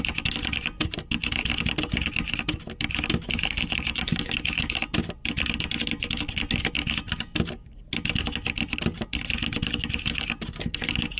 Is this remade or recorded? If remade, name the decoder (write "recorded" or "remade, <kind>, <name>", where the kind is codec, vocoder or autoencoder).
recorded